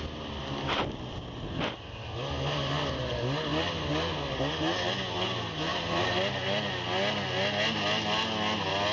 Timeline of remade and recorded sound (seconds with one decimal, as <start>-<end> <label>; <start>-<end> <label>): 0.0-5.7 recorded; 5.7-6.7 remade; 6.7-8.9 recorded